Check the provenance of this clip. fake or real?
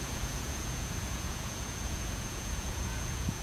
fake